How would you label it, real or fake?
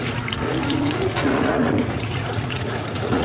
fake